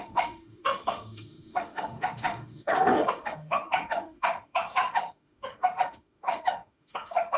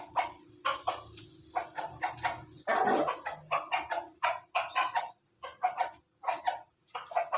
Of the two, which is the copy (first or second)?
first